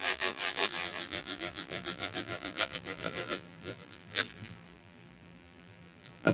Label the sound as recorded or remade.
remade